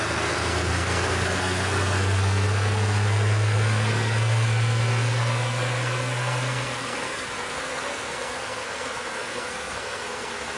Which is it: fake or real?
fake